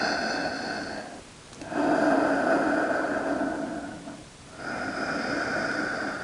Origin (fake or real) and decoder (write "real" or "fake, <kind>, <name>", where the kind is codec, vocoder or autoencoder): real